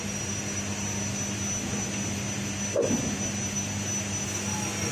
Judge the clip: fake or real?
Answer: real